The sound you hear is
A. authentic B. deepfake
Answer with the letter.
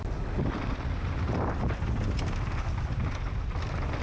A